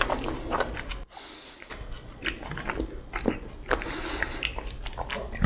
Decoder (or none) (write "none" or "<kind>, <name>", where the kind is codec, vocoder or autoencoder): vocoder, BigVGAN v2